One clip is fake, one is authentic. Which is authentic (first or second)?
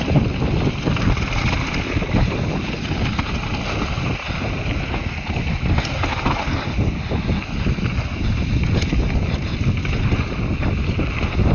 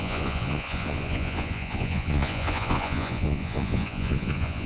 first